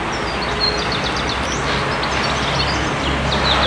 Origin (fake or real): real